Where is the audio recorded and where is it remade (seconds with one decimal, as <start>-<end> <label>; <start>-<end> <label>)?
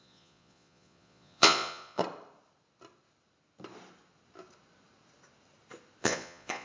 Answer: 0.0-2.0 remade; 2.0-6.0 recorded; 6.0-6.6 remade